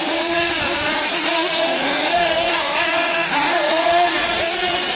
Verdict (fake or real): fake